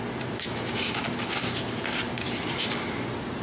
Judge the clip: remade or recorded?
recorded